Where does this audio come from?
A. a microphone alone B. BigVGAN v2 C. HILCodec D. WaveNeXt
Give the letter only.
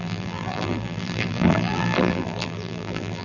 B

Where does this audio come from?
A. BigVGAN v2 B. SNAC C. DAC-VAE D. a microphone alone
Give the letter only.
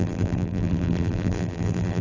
A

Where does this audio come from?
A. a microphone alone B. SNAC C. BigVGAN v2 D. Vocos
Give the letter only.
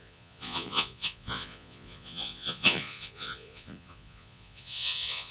D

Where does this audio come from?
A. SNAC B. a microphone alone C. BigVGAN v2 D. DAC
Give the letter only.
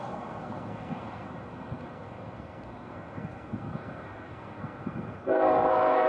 A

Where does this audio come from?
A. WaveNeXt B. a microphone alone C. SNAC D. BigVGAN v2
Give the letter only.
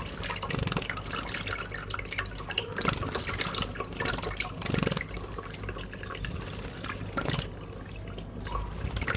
B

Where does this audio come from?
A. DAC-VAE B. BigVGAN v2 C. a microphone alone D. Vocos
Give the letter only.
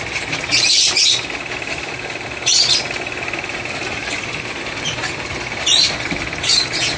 B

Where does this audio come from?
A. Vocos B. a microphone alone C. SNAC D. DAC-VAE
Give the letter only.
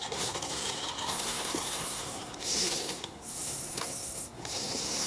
C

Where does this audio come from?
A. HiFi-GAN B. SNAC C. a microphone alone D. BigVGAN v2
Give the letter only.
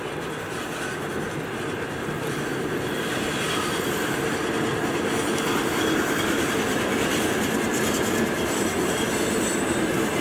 C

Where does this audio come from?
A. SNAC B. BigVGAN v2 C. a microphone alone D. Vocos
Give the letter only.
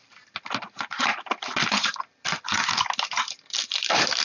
C